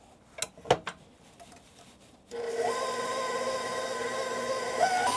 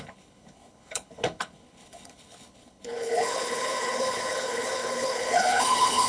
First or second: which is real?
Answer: first